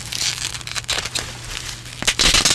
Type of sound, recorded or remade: recorded